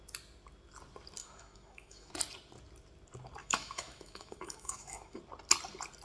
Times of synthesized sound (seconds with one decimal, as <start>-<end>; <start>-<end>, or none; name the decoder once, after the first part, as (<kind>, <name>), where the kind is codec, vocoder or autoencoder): 1.2-2.1 (autoencoder, DAC-VAE); 3.4-5.2